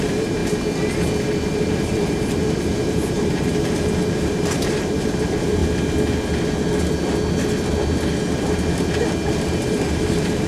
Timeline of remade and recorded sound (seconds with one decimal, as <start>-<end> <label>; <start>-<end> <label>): 0.0-0.4 remade; 0.4-1.7 recorded; 1.7-5.6 remade; 5.6-9.7 recorded; 9.7-10.5 remade